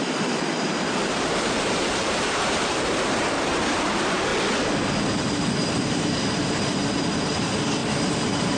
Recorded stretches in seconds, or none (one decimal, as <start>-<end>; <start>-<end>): 4.3-5.2